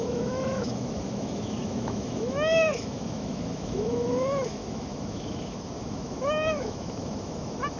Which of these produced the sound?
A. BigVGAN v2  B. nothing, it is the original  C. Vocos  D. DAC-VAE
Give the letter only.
D